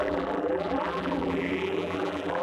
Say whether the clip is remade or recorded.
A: remade